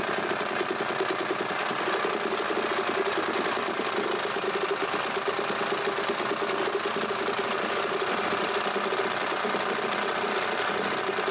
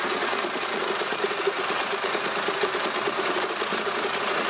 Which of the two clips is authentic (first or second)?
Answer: first